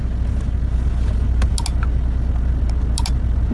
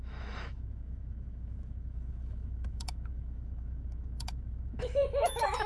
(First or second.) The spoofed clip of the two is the second